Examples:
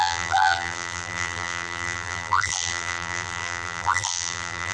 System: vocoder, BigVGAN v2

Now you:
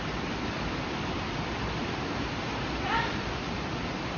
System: vocoder, BigVGAN v2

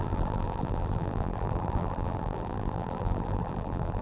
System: vocoder, BigVGAN v2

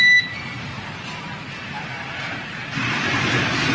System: vocoder, BigVGAN v2